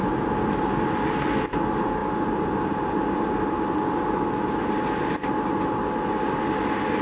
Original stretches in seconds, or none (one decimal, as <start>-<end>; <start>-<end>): 0.0-7.0